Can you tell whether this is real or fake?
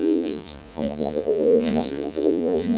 fake